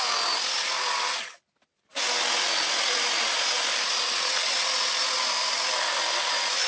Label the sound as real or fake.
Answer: real